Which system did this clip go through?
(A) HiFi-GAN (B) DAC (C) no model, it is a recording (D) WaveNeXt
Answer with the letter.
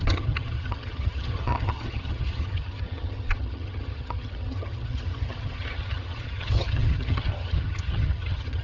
A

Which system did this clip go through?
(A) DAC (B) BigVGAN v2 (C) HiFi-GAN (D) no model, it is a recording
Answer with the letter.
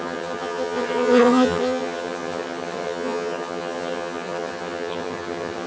C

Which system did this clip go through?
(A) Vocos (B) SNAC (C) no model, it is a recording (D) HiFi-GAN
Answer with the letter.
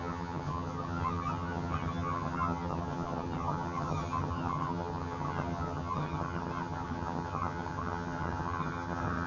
D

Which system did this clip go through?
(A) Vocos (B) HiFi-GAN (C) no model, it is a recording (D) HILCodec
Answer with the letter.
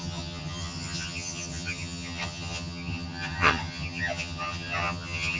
B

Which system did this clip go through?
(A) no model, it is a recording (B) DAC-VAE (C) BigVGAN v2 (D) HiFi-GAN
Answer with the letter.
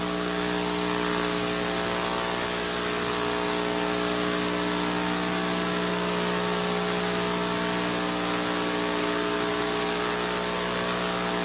A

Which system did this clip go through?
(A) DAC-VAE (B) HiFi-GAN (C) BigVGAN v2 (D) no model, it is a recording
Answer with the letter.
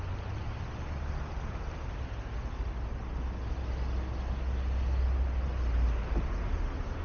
D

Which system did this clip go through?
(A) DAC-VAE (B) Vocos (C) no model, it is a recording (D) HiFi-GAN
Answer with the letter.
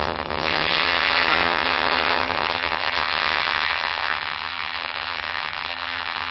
D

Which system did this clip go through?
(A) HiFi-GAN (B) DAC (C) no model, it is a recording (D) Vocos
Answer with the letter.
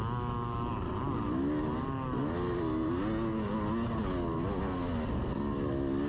C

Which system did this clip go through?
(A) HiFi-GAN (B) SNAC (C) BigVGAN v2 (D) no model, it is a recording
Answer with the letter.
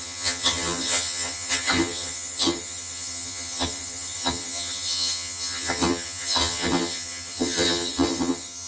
A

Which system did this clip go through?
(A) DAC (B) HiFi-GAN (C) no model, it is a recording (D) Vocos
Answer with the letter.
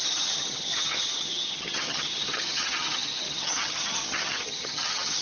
B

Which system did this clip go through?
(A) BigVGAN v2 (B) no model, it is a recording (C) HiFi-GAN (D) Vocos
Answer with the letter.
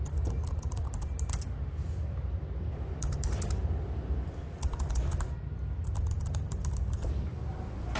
B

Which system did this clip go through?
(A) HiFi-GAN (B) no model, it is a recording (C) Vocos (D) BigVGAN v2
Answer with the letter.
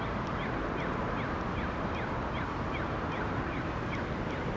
B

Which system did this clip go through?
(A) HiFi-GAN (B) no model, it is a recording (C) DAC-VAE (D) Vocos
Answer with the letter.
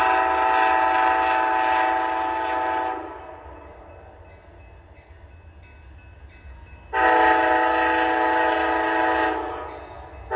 B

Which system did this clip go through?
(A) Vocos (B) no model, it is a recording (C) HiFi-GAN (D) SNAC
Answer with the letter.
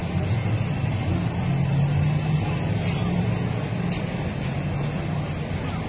B